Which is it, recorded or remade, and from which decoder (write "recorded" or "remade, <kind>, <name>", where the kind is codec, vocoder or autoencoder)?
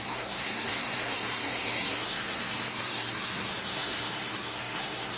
remade, codec, SNAC